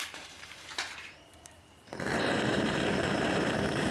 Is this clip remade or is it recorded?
remade